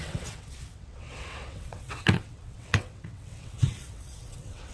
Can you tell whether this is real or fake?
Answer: fake